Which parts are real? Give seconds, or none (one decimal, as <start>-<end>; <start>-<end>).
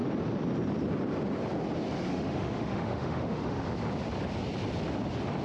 0.0-2.1; 3.6-5.4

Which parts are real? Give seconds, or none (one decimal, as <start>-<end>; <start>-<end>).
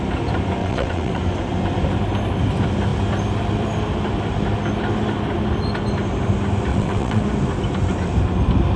0.0-0.6; 1.2-6.7; 7.2-8.8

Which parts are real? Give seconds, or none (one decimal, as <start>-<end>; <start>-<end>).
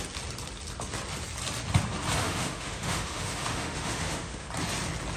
0.0-2.2; 4.5-5.2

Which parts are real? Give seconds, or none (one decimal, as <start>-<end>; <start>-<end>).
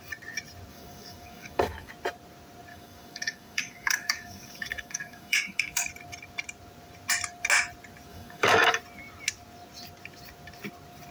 0.0-0.7; 1.9-2.7; 5.9-8.1; 8.8-11.1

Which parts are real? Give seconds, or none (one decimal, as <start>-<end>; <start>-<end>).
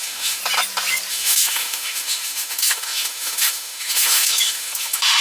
0.4-1.1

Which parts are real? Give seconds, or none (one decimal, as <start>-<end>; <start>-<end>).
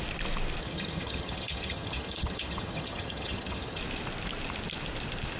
0.0-0.6; 3.8-5.4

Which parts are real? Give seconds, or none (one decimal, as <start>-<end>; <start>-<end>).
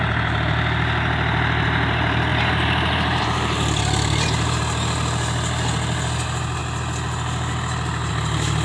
0.0-2.3; 4.6-8.6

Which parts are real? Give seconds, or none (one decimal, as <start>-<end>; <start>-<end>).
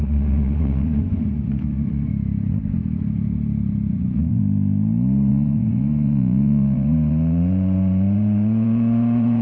2.1-3.9; 4.4-5.3